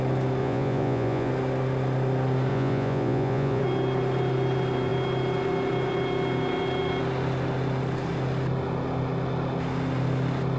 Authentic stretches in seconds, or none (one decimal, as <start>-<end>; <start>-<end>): 0.0-0.4; 1.3-2.5; 3.6-10.6